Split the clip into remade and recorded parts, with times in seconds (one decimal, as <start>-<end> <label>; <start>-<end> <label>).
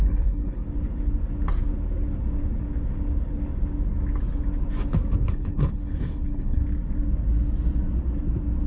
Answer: 0.0-0.6 remade; 0.6-5.3 recorded; 5.3-6.6 remade; 6.6-8.7 recorded